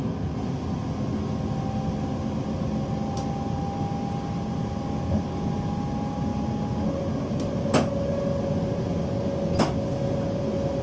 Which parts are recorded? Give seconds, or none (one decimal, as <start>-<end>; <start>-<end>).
0.0-10.8